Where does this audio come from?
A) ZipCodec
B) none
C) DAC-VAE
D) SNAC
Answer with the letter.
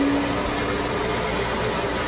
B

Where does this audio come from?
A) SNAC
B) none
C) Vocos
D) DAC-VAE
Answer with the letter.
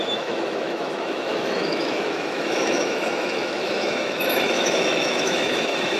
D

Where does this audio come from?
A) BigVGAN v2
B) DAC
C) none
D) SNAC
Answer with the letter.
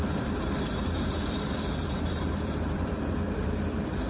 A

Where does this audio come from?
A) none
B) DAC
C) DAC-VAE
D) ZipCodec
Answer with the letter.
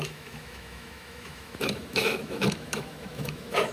C